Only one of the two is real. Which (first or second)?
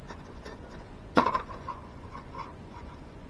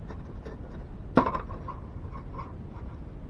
second